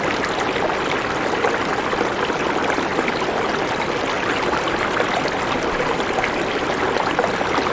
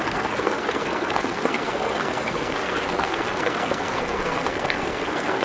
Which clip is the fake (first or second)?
second